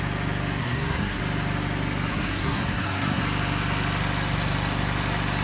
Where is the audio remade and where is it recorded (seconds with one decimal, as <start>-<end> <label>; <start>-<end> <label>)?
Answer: 0.0-0.6 recorded; 0.6-1.2 remade; 1.2-2.1 recorded; 2.1-3.2 remade; 3.2-5.4 recorded